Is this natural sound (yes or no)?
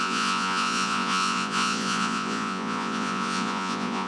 no